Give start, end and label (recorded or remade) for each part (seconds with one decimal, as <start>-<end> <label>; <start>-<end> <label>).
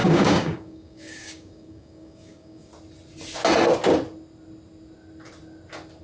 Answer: 0.0-2.7 remade; 2.7-6.0 recorded